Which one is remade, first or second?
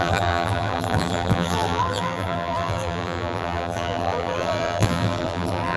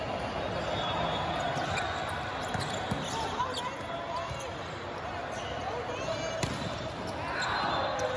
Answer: first